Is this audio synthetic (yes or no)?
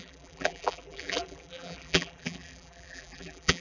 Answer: yes